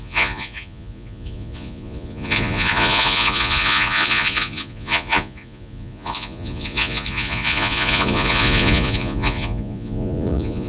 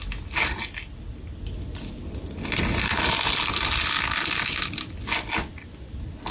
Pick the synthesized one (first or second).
first